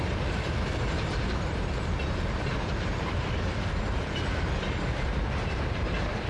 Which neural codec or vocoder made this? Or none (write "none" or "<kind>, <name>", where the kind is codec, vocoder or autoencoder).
vocoder, BigVGAN v2